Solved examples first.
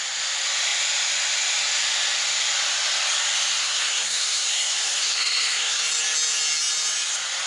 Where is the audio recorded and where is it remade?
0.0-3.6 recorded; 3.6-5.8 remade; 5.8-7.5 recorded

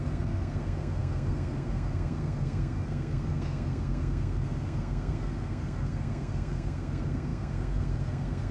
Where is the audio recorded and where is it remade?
0.0-8.5 remade

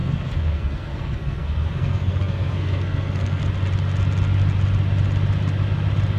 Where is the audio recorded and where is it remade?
0.0-3.4 remade; 3.4-6.2 recorded

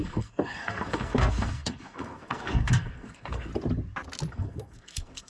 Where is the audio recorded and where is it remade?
0.0-3.5 remade; 3.5-4.3 recorded; 4.3-5.3 remade

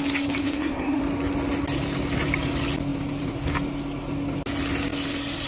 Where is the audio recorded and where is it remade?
0.0-0.4 recorded; 0.4-1.0 remade; 1.0-5.5 recorded